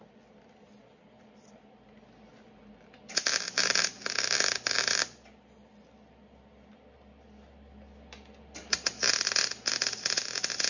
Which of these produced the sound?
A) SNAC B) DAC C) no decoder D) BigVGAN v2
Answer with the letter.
C